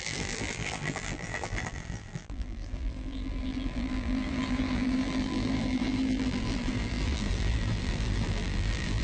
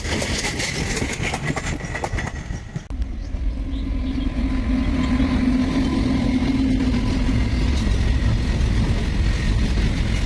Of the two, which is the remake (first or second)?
first